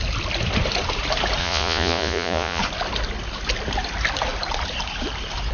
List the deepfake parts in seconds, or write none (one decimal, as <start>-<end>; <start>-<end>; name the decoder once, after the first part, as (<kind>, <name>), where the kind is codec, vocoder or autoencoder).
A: 1.4-2.6 (vocoder, Vocos)